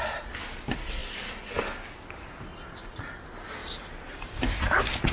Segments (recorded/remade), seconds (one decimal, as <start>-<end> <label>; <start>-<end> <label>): 0.0-3.6 recorded; 3.6-4.6 remade; 4.6-5.1 recorded